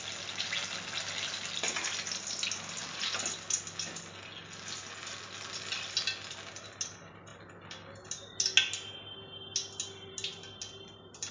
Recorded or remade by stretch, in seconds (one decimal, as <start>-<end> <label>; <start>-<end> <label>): 0.0-11.3 recorded